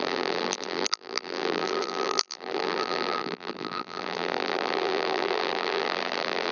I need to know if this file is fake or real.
fake